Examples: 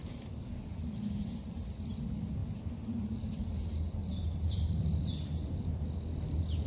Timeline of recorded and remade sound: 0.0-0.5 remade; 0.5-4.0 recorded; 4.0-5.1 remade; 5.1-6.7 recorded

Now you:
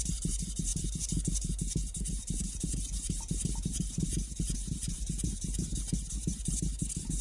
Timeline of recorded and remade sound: 0.0-0.7 remade; 0.7-2.1 recorded; 2.1-7.2 remade

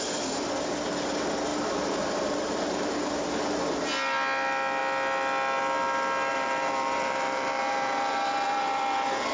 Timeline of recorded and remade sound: 0.0-1.5 recorded; 1.5-2.9 remade; 2.9-6.3 recorded; 6.3-9.3 remade

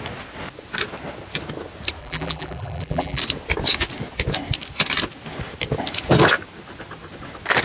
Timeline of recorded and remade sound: 0.0-2.0 recorded; 2.0-3.2 remade; 3.2-7.6 recorded